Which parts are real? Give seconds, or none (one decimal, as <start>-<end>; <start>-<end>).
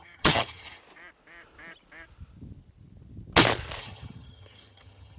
0.8-3.8